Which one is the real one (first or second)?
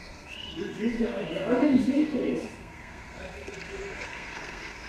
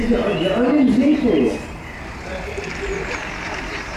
second